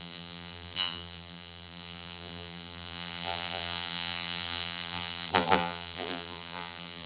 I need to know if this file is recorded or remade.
remade